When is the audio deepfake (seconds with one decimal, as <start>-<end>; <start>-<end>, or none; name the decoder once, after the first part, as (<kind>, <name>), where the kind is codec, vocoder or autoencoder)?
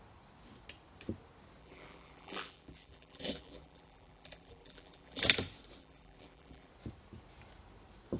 1.6-5.2 (vocoder, BigVGAN v2); 5.8-6.7